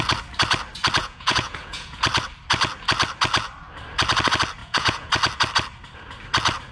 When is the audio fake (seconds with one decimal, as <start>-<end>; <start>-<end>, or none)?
1.0-2.0; 4.6-5.1